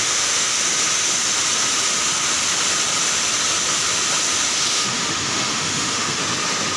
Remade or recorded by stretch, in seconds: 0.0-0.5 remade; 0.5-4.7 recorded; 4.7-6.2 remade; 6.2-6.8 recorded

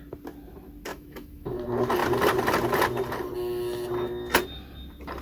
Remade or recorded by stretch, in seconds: 0.0-0.9 recorded; 0.9-1.6 remade; 1.6-5.2 recorded

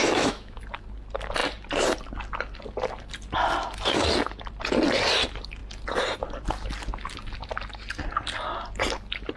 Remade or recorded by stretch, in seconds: 0.0-0.6 remade; 0.6-9.4 recorded

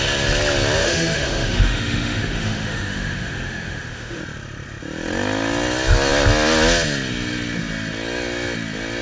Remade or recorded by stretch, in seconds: 0.0-0.8 recorded; 0.8-4.2 remade; 4.2-9.0 recorded